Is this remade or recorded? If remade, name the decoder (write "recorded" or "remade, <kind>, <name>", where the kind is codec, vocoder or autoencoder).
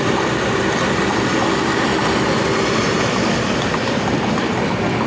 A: recorded